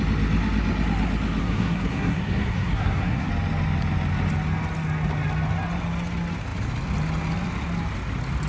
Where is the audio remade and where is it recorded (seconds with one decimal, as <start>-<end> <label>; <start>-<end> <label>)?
0.0-1.4 recorded; 1.4-3.3 remade; 3.3-8.5 recorded

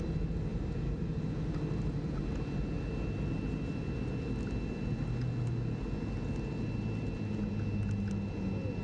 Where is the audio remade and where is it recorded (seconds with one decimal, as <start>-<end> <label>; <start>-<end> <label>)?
0.0-0.5 recorded; 0.5-1.2 remade; 1.2-8.8 recorded

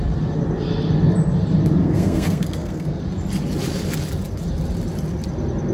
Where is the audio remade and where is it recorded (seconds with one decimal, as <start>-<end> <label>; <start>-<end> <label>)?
0.0-1.8 recorded; 1.8-3.0 remade; 3.0-5.7 recorded

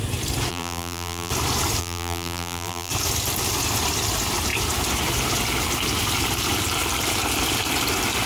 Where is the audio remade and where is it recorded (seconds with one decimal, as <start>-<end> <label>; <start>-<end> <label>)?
0.0-0.5 recorded; 0.5-1.3 remade; 1.3-1.8 recorded; 1.8-2.9 remade; 2.9-8.3 recorded

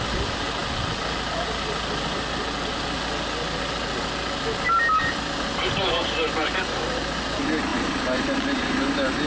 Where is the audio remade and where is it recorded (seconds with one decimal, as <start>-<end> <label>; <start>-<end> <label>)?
0.0-9.3 recorded

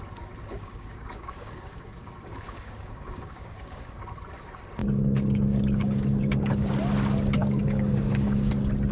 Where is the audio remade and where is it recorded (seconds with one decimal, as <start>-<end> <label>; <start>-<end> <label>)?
0.0-0.5 recorded; 0.5-4.0 remade; 4.0-4.8 recorded; 4.8-6.7 remade; 6.7-7.4 recorded; 7.4-8.5 remade; 8.5-8.9 recorded

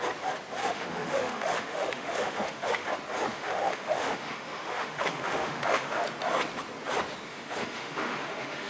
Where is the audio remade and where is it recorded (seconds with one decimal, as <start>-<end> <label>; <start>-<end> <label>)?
0.0-0.6 recorded; 0.6-2.9 remade; 2.9-3.3 recorded; 3.3-6.0 remade; 6.0-7.3 recorded; 7.3-8.7 remade